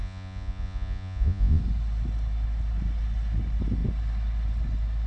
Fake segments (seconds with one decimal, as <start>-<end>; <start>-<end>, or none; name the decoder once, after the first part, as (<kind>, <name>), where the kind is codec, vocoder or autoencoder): 0.0-1.6 (vocoder, Vocos)